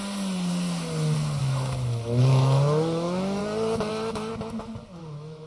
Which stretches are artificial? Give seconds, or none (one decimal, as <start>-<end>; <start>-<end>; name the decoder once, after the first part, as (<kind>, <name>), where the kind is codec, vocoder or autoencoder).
1.4-3.4 (autoencoder, DAC-VAE); 3.9-4.3; 5.0-5.5